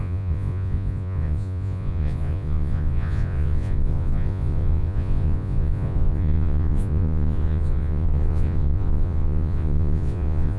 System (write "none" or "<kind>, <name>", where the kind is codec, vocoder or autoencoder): vocoder, Vocos